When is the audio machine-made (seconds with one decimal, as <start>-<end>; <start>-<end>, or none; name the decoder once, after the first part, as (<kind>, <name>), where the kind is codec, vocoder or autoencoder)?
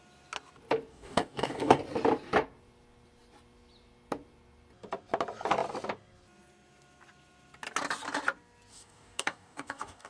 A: 0.9-1.8 (codec, DAC); 8.7-10.1